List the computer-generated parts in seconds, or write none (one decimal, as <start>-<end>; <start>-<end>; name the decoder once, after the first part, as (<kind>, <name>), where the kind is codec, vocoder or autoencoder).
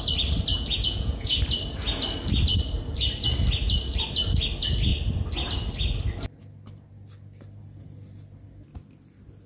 0.5-1.4 (vocoder, Vocos)